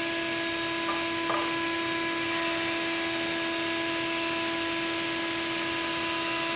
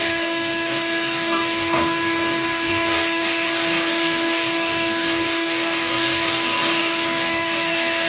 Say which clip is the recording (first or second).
first